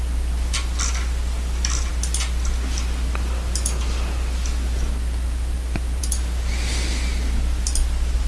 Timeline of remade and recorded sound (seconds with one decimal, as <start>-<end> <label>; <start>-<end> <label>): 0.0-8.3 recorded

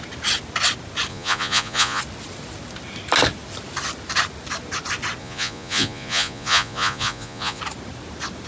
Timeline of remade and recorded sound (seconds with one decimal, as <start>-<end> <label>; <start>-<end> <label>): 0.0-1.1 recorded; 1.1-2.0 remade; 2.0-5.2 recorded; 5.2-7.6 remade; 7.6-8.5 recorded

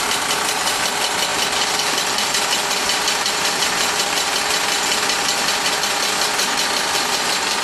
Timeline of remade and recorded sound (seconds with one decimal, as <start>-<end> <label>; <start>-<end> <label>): 0.0-7.6 recorded

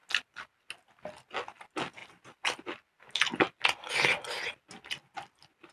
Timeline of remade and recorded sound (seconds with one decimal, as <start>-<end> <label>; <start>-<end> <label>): 0.0-5.7 recorded

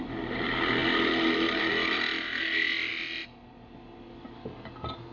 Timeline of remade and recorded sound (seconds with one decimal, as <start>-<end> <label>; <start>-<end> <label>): 0.0-5.1 recorded

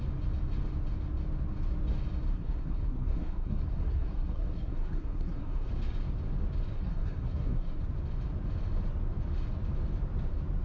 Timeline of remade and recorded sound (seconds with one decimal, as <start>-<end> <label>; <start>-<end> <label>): 0.0-2.3 recorded; 2.3-5.7 remade; 5.7-6.7 recorded; 6.7-7.8 remade; 7.8-10.6 recorded

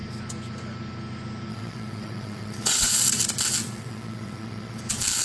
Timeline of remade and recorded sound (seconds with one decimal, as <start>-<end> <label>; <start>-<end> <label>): 0.0-1.5 recorded; 1.5-2.9 remade; 2.9-3.6 recorded; 3.6-4.8 remade; 4.8-5.2 recorded